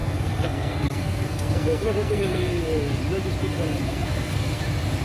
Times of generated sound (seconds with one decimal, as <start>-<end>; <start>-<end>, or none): 0.0-3.0; 3.4-4.6